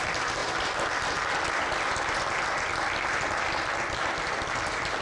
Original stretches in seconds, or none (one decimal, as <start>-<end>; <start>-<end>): 0.0-5.0